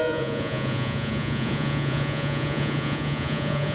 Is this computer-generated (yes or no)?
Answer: yes